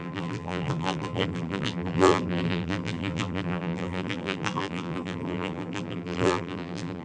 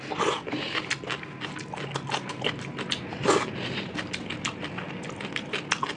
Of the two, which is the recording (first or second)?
second